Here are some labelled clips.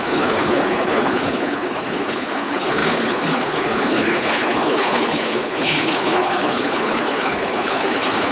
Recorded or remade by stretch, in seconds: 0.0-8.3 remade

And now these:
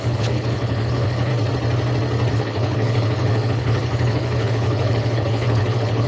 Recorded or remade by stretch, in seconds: 0.0-1.3 remade; 1.3-2.3 recorded; 2.3-6.1 remade

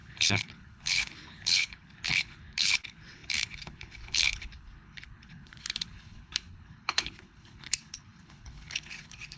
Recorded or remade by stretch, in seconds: 0.0-9.4 remade

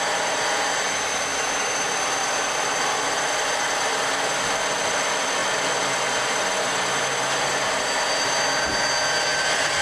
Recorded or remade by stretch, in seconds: 0.0-9.8 recorded

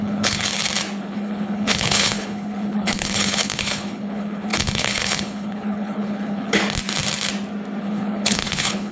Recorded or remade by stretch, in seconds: 0.0-0.5 remade; 0.5-1.0 recorded; 1.0-6.6 remade; 6.6-7.8 recorded; 7.8-8.9 remade

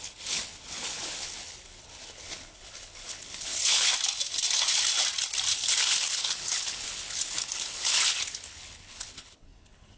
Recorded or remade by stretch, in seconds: 0.0-3.9 remade; 3.9-5.5 recorded; 5.5-10.0 remade

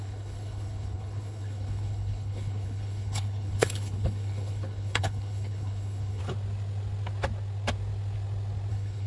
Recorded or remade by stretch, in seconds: 0.0-6.2 remade; 6.2-8.7 recorded; 8.7-9.1 remade